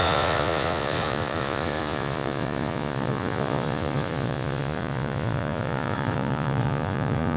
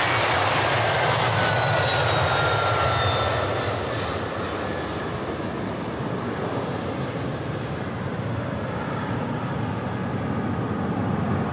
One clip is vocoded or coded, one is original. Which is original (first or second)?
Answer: second